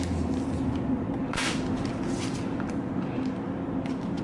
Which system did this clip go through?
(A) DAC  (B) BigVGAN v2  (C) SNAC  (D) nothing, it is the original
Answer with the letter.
D